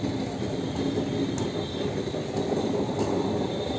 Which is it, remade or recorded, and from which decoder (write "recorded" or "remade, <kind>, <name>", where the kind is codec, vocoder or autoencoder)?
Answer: recorded